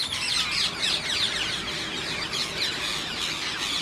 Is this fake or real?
real